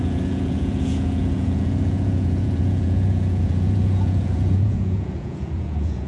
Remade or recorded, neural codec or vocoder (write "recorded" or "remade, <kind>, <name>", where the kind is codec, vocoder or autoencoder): remade, vocoder, Vocos